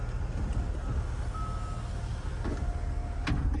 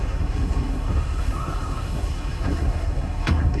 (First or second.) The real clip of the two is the first